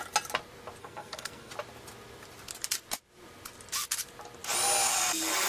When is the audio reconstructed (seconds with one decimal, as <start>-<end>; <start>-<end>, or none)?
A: 0.8-1.5